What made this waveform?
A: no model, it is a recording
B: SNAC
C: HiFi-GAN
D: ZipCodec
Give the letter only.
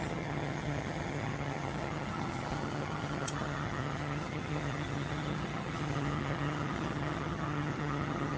C